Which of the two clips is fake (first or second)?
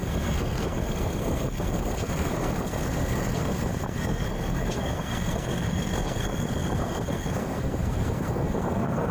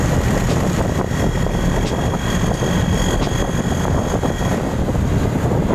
first